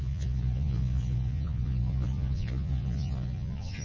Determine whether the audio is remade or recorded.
remade